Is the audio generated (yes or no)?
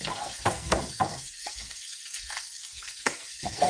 yes